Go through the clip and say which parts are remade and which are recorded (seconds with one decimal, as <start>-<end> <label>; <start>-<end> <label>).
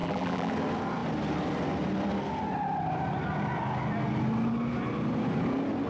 0.0-0.5 remade; 0.5-5.9 recorded